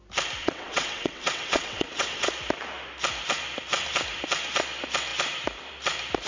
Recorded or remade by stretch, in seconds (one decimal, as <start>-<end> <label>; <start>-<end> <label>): 0.0-0.4 recorded; 0.4-2.3 remade; 2.3-6.3 recorded